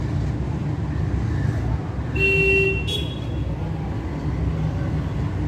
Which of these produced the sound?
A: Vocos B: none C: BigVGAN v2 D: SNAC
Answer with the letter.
B